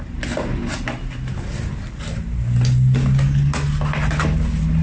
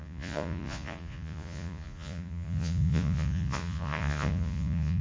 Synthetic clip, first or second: second